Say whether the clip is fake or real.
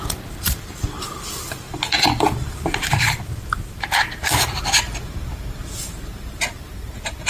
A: fake